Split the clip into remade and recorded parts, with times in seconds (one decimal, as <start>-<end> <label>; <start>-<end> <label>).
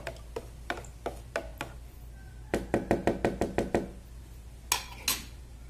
0.0-5.7 recorded